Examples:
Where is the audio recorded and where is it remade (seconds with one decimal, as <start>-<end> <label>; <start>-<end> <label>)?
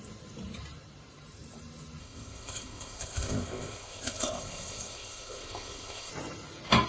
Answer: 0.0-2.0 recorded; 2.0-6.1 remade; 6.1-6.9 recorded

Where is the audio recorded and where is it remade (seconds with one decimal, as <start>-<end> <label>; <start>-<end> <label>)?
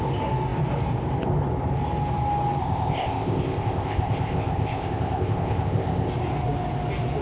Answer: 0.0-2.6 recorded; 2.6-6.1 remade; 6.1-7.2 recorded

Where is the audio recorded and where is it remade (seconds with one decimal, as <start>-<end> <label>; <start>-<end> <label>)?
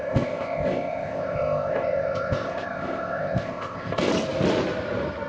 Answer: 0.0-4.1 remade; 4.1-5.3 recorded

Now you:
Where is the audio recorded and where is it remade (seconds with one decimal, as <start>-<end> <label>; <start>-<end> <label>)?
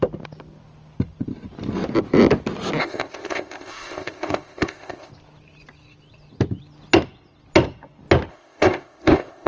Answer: 0.0-2.8 recorded; 2.8-5.1 remade; 5.1-8.3 recorded; 8.3-9.5 remade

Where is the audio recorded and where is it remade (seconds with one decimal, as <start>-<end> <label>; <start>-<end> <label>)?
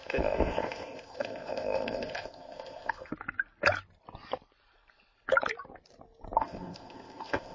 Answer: 0.0-3.1 remade; 3.1-6.4 recorded; 6.4-7.5 remade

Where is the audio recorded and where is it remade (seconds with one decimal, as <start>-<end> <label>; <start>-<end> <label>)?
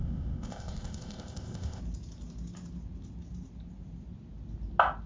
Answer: 0.0-1.8 remade; 1.8-5.1 recorded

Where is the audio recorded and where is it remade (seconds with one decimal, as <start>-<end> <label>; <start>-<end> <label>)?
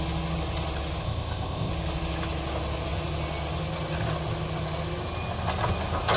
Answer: 0.0-1.0 recorded; 1.0-1.7 remade; 1.7-6.2 recorded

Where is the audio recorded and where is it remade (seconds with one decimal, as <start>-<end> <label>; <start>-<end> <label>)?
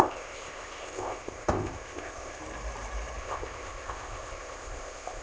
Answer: 0.0-2.4 remade; 2.4-3.2 recorded; 3.2-5.2 remade